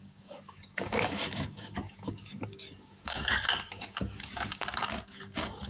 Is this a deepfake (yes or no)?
yes